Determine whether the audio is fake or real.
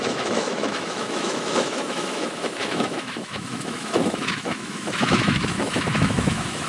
fake